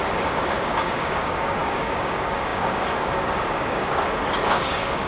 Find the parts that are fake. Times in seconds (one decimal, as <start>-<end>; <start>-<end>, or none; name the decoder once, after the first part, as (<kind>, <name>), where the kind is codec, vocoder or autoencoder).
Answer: 0.0-5.1 (codec, DAC)